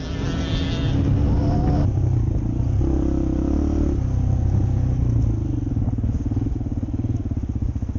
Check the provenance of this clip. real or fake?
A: real